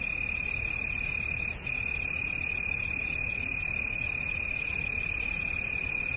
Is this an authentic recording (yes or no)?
yes